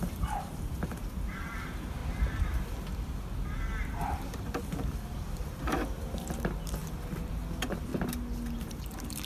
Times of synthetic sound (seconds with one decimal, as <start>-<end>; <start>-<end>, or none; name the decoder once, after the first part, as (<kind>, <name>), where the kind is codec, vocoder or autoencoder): 0.0-2.0 (vocoder, BigVGAN v2); 4.7-6.8; 7.3-7.9; 8.6-9.2